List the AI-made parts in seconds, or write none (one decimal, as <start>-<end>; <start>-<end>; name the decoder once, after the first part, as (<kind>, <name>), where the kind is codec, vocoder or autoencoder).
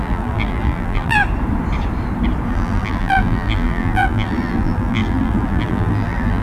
0.0-1.2 (vocoder, BigVGAN v2); 2.5-6.4